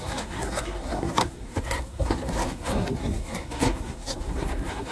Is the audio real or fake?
fake